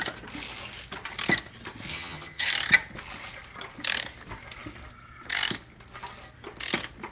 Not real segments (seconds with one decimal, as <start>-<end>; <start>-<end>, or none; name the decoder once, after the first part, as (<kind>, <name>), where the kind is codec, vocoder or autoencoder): 1.9-2.5 (vocoder, HiFi-GAN)